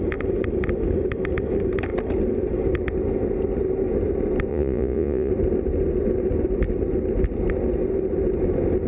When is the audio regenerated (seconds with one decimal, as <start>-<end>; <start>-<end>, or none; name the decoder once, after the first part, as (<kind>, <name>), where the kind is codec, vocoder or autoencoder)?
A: 4.5-5.3 (vocoder, Vocos)